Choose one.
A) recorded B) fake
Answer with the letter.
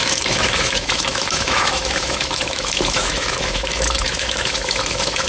B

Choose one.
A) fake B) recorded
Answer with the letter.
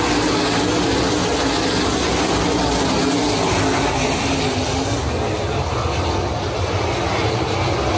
B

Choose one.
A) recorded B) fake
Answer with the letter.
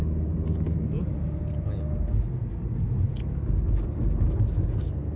A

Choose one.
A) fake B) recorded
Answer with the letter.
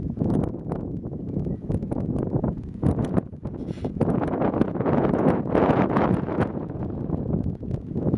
A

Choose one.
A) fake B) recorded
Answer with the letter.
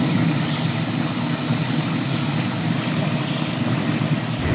B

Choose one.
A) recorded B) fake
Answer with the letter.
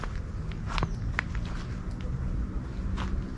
A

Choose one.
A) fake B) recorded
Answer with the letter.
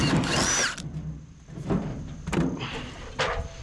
A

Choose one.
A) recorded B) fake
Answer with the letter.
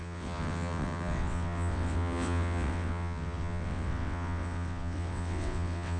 B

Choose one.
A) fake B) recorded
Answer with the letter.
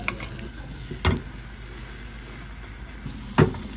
B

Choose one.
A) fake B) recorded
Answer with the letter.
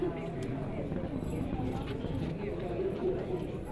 B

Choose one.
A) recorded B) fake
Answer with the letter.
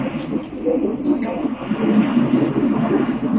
A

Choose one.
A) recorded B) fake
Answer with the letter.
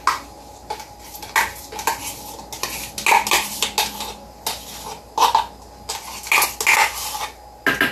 A